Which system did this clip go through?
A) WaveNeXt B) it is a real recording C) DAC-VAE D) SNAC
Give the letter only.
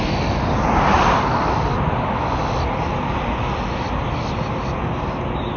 B